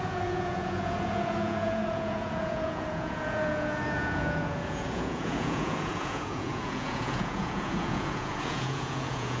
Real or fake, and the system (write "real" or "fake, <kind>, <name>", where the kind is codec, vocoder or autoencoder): fake, vocoder, Vocos